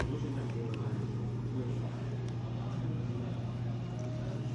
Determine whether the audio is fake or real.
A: real